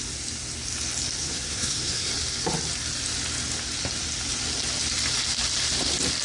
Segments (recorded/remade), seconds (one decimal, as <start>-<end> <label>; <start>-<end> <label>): 0.0-1.2 recorded; 1.2-2.1 remade; 2.1-6.2 recorded